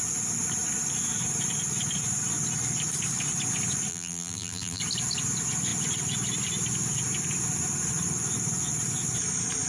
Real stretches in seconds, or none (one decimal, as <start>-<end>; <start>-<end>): 0.0-3.9; 4.8-9.7